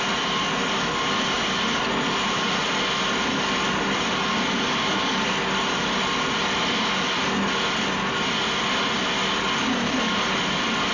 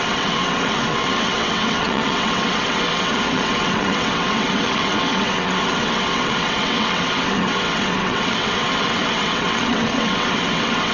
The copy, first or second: second